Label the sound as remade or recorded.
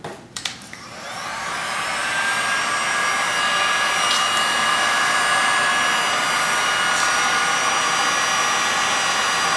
recorded